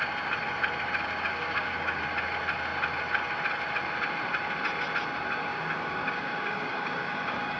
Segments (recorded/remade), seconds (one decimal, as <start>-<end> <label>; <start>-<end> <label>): 0.0-1.3 recorded; 1.3-2.0 remade; 2.0-5.5 recorded; 5.5-7.6 remade